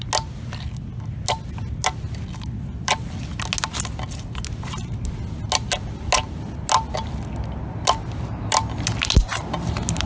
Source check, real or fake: real